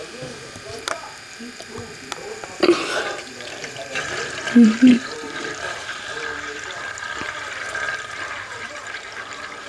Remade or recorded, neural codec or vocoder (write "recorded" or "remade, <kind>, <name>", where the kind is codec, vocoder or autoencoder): remade, vocoder, BigVGAN v2